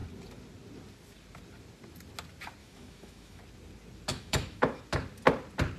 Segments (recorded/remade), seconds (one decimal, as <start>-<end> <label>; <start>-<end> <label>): 0.0-2.6 recorded; 2.6-3.4 remade; 3.4-4.1 recorded; 4.1-4.8 remade; 4.8-5.8 recorded